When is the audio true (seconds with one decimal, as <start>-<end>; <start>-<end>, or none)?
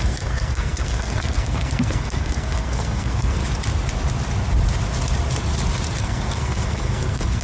3.4-6.0